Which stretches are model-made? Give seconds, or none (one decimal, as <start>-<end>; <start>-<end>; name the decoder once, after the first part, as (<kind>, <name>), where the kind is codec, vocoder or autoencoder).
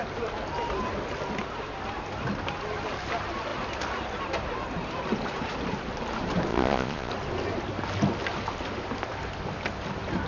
6.5-7.1 (vocoder, Vocos)